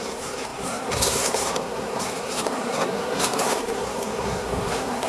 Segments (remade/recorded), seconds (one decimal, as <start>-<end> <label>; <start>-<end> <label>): 0.0-5.1 remade